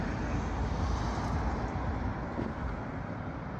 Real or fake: real